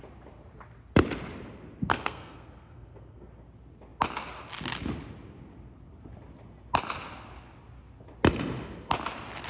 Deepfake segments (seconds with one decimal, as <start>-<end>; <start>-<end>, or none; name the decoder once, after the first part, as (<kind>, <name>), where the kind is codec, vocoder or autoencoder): 1.9-3.3 (codec, SNAC)